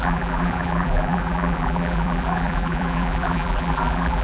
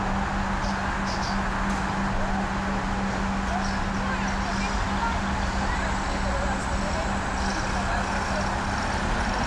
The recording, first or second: second